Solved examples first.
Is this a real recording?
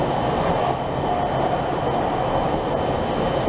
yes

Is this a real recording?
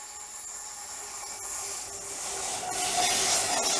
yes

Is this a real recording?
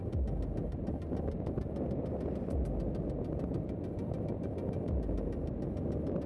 yes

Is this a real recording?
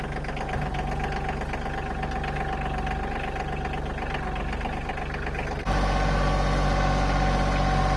yes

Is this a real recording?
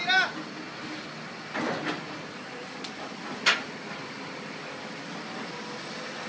yes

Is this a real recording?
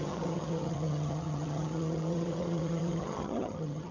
no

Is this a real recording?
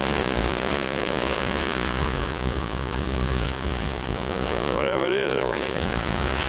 no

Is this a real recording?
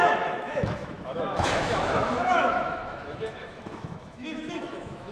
no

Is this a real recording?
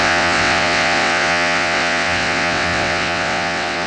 no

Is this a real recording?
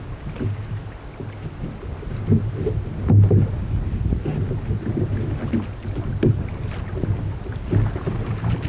yes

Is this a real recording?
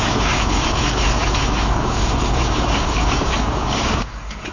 no